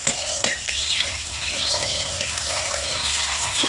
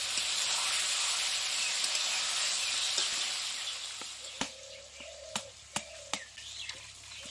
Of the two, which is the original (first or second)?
second